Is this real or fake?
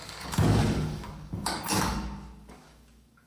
fake